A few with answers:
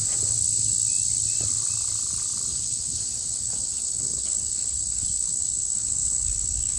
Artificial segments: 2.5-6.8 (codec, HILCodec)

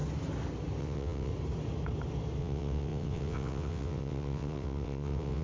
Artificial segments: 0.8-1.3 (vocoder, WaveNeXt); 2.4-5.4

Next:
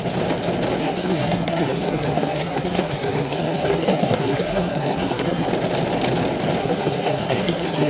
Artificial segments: 0.8-5.5 (codec, SNAC); 6.6-7.9